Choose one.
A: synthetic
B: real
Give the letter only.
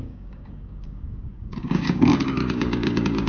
A